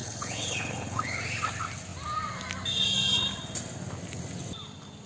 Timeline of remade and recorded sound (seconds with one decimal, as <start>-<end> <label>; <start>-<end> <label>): 0.0-1.2 remade; 1.2-5.1 recorded

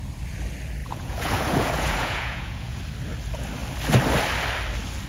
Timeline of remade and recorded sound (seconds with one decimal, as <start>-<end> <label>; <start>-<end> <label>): 0.0-0.8 recorded; 0.8-2.8 remade; 2.8-5.1 recorded

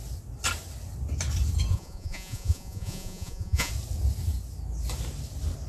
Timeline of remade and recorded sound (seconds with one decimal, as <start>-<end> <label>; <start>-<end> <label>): 0.0-1.7 recorded; 1.7-3.7 remade; 3.7-5.7 recorded

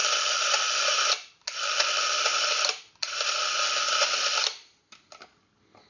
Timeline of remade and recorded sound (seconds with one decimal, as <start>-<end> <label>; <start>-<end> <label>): 0.0-5.9 recorded